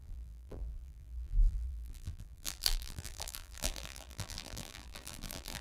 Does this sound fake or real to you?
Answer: fake